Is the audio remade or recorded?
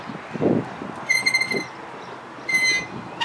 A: recorded